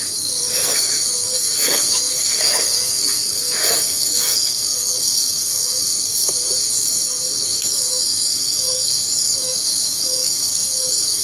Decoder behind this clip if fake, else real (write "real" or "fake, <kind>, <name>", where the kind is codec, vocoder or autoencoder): fake, codec, SNAC